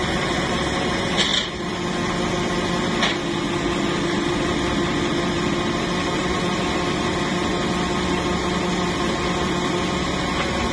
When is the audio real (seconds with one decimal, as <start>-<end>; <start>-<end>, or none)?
0.0-10.7